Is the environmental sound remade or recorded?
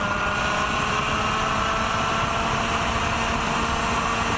recorded